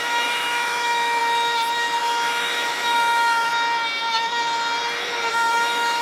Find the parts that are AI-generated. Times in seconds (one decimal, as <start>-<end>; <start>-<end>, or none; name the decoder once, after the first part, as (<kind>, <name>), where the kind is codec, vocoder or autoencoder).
0.0-1.2 (autoencoder, DAC-VAE); 2.0-3.5; 5.3-6.0